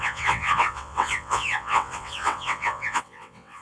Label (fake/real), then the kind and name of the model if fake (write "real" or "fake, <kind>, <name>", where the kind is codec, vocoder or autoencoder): fake, vocoder, WaveNeXt